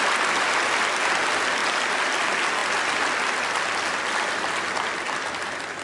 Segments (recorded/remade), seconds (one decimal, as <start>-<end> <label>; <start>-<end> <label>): 0.0-5.8 recorded